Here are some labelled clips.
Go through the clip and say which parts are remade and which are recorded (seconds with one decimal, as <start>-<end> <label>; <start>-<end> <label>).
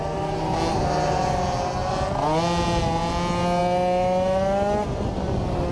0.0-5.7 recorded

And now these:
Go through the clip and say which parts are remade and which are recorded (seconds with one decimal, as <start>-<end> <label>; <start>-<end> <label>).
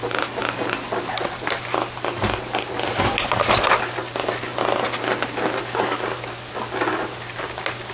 0.0-7.9 recorded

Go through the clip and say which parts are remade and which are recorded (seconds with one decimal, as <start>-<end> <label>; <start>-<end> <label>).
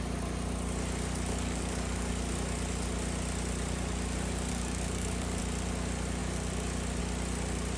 0.0-1.3 recorded; 1.3-2.1 remade; 2.1-4.5 recorded; 4.5-5.4 remade; 5.4-7.8 recorded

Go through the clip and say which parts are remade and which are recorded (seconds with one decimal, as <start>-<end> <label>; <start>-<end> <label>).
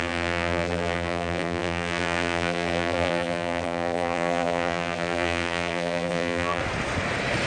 0.0-6.6 remade; 6.6-7.5 recorded